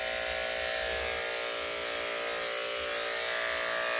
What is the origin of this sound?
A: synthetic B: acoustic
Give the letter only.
B